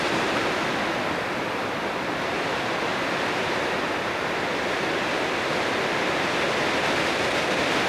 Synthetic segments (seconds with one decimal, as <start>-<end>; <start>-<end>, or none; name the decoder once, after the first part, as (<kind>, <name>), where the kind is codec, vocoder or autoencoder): none